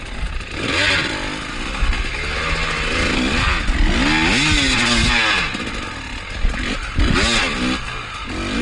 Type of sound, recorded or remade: recorded